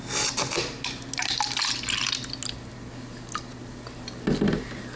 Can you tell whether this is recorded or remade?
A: recorded